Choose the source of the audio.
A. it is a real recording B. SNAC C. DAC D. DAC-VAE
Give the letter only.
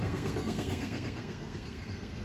B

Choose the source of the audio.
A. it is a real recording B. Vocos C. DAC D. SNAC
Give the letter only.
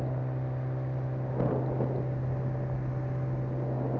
A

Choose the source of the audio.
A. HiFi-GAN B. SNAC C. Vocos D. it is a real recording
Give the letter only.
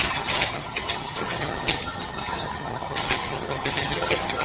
A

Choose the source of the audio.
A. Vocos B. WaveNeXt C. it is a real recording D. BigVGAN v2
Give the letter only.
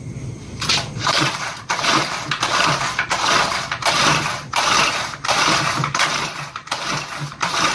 D